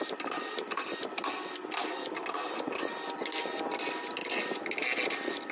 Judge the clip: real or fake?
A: real